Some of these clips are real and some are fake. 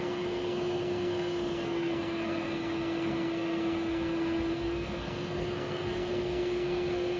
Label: fake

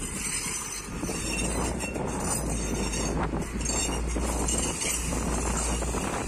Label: real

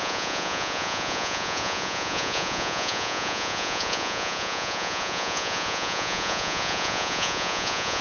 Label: fake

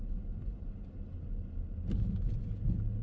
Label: real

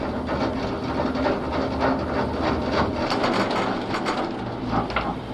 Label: real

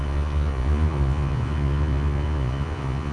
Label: fake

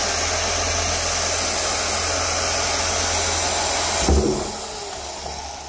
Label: real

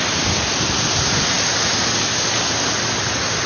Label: fake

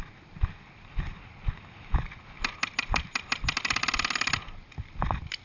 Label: real